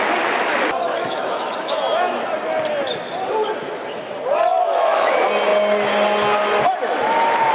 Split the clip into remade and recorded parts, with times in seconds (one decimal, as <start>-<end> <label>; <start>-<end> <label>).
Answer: 0.0-0.8 recorded; 0.8-1.8 remade; 1.8-4.5 recorded; 4.5-5.1 remade; 5.1-7.5 recorded

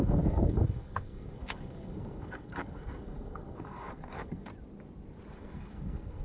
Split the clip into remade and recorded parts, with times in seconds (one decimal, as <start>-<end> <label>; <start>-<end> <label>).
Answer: 0.0-4.5 remade; 4.5-5.3 recorded; 5.3-6.2 remade